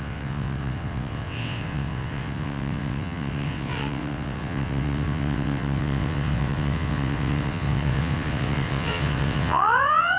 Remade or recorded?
remade